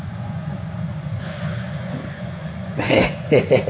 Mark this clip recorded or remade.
remade